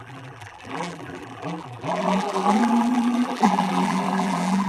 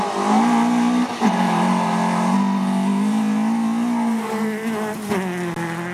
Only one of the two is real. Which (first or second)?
second